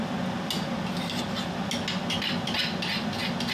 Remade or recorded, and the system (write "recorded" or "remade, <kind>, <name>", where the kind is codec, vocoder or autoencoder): recorded